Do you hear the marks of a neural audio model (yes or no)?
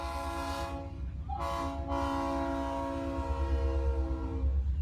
no